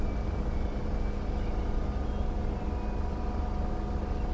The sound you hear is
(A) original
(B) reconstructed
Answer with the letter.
A